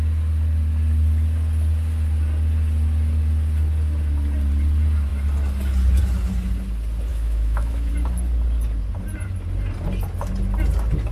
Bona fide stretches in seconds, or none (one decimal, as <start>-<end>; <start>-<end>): 0.0-7.1; 7.9-11.1